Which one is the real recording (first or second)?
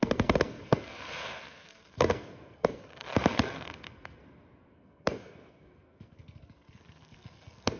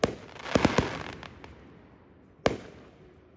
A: second